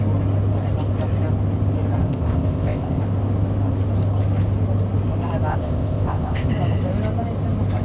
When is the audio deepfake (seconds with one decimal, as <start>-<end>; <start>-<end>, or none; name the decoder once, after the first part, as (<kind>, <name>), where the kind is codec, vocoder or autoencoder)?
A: 2.0-3.0 (codec, ZipCodec); 5.5-6.5